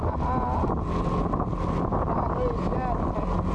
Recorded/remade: recorded